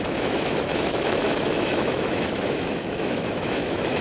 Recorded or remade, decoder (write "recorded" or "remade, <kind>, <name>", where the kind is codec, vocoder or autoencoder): remade, autoencoder, DAC-VAE